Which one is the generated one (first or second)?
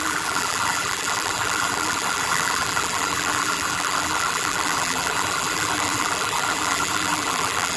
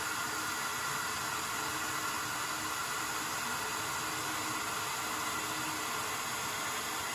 first